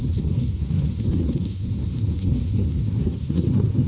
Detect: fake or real fake